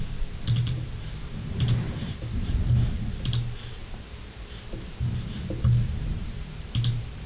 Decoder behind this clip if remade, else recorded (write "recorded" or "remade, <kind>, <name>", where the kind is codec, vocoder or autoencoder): remade, vocoder, BigVGAN v2